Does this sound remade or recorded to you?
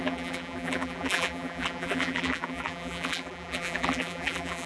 remade